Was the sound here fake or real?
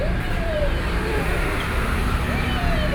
fake